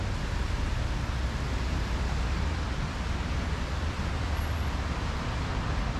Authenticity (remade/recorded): recorded